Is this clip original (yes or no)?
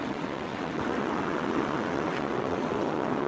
no